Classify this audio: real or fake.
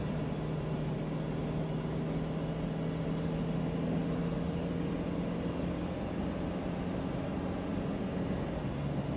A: real